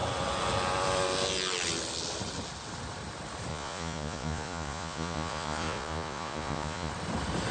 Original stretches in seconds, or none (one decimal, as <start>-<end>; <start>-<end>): 0.0-3.5; 6.9-7.5